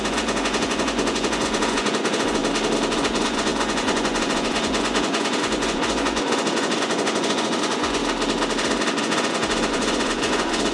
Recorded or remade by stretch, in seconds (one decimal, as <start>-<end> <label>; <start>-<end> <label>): 0.0-2.4 remade; 2.4-2.9 recorded; 2.9-8.0 remade; 8.0-9.0 recorded; 9.0-10.7 remade